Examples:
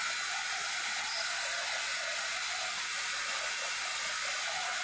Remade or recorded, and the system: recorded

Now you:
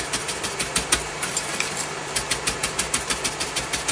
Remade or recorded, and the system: remade, vocoder, BigVGAN v2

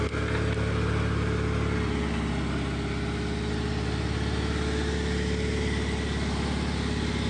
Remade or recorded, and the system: recorded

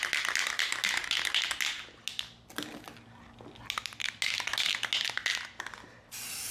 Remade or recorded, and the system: recorded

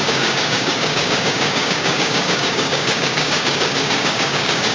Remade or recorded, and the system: remade, codec, DAC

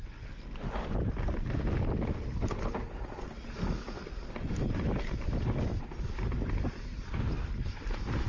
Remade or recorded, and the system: recorded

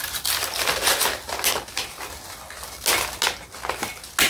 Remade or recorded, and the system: recorded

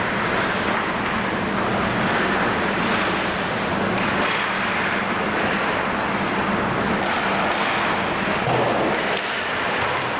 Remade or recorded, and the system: recorded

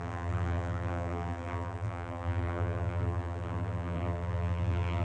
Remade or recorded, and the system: remade, vocoder, BigVGAN v2